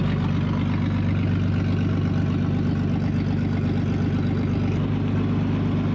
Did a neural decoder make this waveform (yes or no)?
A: no